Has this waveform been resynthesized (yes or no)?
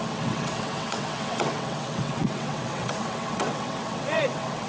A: yes